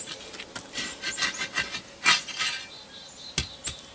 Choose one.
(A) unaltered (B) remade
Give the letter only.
A